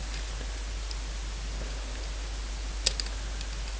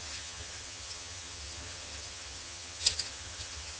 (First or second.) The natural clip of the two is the first